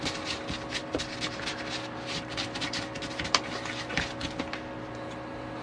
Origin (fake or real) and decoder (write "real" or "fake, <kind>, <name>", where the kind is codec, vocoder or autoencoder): real